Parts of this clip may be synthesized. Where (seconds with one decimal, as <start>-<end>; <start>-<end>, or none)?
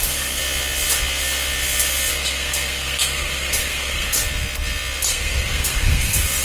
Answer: 0.0-0.4; 2.1-4.2; 5.1-6.4